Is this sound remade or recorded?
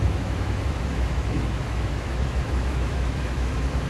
remade